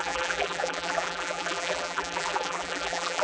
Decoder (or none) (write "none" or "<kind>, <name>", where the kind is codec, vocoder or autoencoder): vocoder, BigVGAN v2